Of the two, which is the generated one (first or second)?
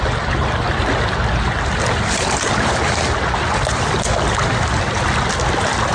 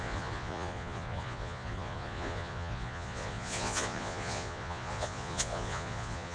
second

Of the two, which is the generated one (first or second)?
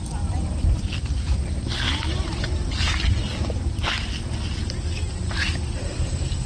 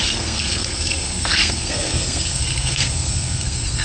second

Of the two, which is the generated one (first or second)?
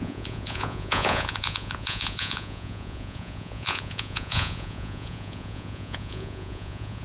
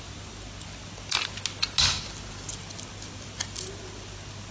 first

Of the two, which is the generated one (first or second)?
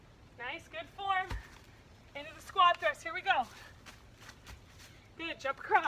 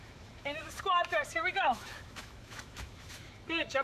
second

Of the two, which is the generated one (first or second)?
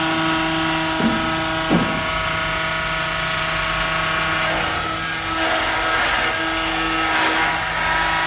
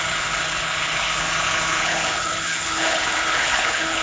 second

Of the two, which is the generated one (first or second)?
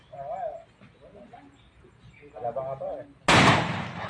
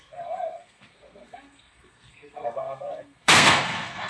second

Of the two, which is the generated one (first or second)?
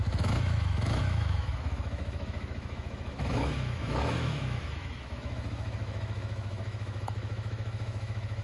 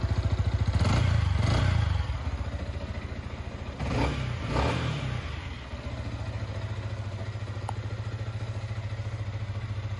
first